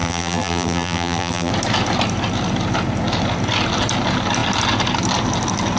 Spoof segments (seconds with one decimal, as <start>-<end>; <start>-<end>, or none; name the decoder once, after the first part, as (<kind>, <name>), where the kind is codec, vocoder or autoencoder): 0.0-1.5 (vocoder, BigVGAN v2)